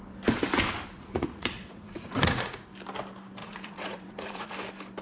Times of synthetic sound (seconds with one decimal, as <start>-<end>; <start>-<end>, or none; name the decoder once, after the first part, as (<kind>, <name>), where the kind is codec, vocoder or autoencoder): 0.9-2.7 (vocoder, Vocos); 3.4-4.5